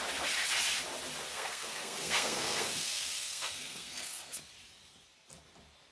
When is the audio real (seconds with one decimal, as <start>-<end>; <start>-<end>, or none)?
0.0-1.3; 4.4-5.9